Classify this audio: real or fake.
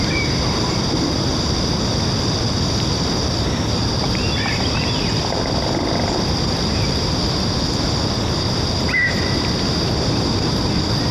real